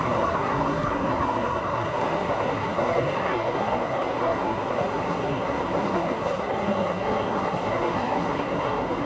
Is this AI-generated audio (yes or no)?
yes